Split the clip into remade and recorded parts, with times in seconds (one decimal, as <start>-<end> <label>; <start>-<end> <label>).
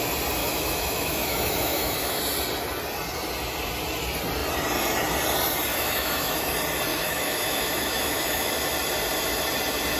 0.0-0.4 recorded; 0.4-2.2 remade; 2.2-5.7 recorded; 5.7-6.5 remade; 6.5-6.9 recorded; 6.9-8.5 remade; 8.5-10.0 recorded